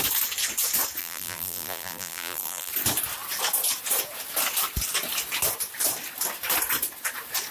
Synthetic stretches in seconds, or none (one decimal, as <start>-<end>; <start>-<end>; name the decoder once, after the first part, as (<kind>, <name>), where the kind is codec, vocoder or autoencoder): 1.0-2.7 (vocoder, BigVGAN v2)